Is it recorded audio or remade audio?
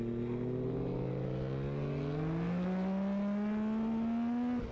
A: recorded